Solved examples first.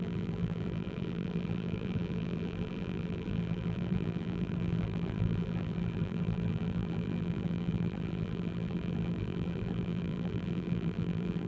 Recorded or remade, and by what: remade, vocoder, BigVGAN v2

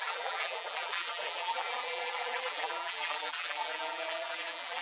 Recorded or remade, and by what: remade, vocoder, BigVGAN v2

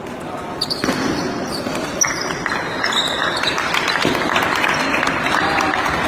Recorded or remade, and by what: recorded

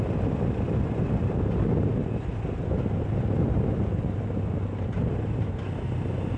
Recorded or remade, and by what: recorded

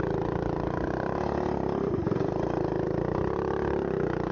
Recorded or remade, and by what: recorded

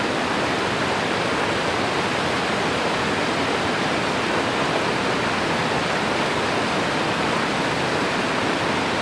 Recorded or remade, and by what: recorded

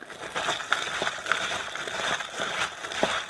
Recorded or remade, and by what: remade, vocoder, BigVGAN v2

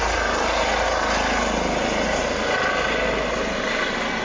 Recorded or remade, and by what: recorded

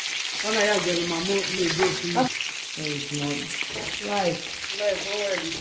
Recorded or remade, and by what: recorded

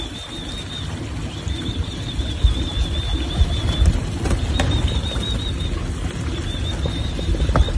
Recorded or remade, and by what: recorded